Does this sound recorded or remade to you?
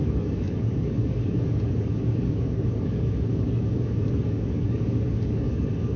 remade